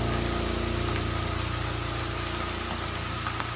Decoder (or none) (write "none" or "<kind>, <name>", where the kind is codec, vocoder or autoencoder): none